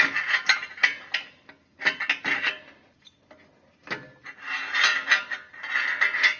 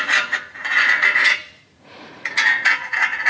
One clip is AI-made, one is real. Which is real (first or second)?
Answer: first